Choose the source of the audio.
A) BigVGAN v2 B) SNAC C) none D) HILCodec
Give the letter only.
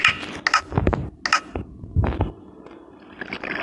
C